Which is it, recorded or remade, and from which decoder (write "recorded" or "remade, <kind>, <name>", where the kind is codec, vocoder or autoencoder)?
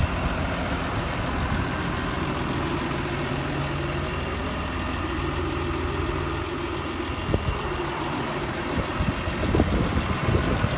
recorded